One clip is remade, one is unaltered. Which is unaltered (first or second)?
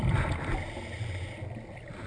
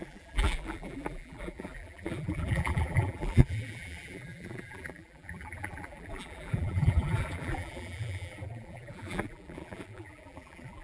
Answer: first